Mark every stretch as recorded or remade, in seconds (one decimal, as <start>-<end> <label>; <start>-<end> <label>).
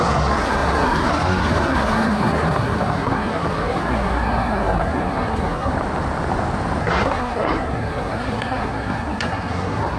0.0-5.7 remade; 5.7-6.8 recorded; 6.8-10.0 remade